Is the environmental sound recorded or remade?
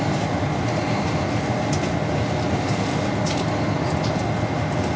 recorded